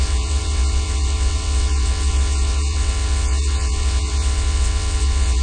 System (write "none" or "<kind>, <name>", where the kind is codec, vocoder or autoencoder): vocoder, WaveNeXt